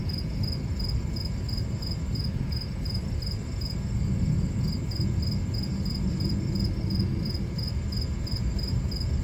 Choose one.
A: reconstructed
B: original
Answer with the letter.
B